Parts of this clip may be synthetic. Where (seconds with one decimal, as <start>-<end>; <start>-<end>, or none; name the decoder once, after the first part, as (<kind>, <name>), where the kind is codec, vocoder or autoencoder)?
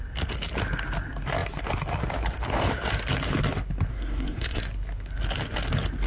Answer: 3.9-4.6 (codec, SNAC)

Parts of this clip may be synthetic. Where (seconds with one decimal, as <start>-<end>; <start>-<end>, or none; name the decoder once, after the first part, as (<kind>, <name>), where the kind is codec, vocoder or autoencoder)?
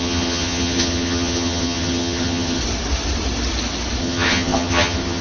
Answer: 0.0-2.6 (vocoder, HiFi-GAN); 4.0-5.2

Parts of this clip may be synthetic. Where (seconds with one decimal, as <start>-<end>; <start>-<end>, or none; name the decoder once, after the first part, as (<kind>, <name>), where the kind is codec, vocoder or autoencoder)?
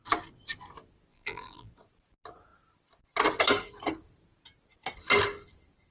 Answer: 1.1-1.7 (vocoder, BigVGAN v2)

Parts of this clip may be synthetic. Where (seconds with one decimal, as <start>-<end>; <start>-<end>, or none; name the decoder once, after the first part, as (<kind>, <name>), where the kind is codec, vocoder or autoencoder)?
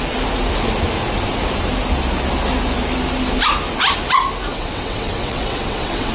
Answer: 4.5-6.1 (vocoder, WaveNeXt)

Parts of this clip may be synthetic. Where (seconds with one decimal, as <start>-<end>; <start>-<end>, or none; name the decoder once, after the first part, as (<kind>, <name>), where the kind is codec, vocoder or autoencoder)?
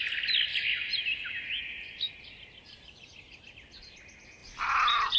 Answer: none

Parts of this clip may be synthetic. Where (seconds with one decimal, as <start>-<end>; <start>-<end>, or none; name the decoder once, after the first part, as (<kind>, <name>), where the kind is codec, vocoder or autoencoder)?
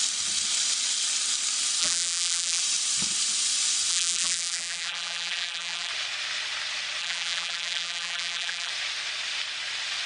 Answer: 1.8-2.6 (vocoder, BigVGAN v2); 3.9-5.9; 7.0-8.7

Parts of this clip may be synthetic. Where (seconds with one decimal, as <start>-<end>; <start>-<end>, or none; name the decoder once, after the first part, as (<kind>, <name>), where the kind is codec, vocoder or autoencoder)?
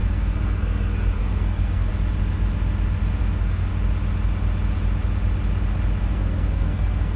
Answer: 0.0-1.9 (codec, SNAC); 3.2-3.7; 6.0-7.2